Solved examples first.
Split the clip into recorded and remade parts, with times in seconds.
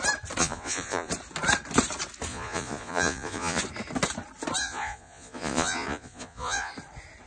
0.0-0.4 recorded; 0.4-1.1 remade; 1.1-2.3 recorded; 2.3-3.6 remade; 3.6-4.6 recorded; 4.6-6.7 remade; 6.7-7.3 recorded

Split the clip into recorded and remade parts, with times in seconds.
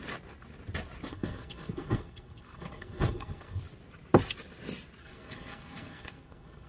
0.0-1.1 recorded; 1.1-3.6 remade; 3.6-5.0 recorded; 5.0-6.7 remade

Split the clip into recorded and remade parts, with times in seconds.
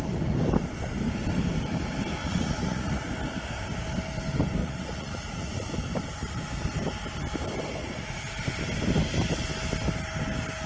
0.0-2.2 recorded; 2.2-3.1 remade; 3.1-4.6 recorded; 4.6-5.7 remade; 5.7-7.8 recorded; 7.8-8.4 remade; 8.4-10.7 recorded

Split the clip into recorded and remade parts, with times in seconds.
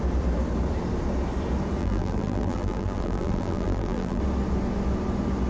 0.0-1.8 recorded; 1.8-4.2 remade; 4.2-5.5 recorded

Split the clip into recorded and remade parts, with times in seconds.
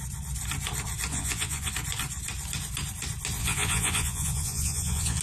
0.0-1.1 recorded; 1.1-1.7 remade; 1.7-3.4 recorded; 3.4-5.2 remade